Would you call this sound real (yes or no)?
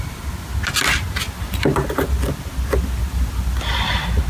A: yes